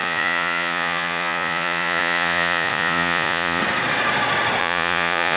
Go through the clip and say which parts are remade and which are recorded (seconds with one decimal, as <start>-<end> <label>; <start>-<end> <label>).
0.0-3.6 remade; 3.6-4.6 recorded; 4.6-5.4 remade